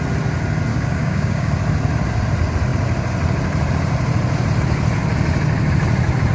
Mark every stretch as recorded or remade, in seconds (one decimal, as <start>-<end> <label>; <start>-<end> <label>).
0.0-0.7 recorded; 0.7-1.5 remade; 1.5-6.3 recorded